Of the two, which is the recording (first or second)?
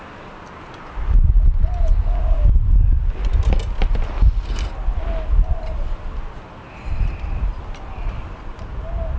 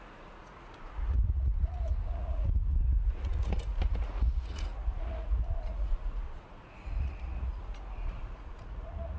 first